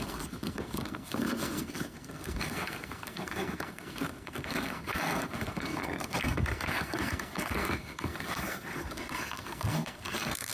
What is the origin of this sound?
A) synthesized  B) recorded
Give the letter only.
A